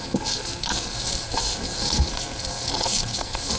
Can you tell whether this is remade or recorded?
remade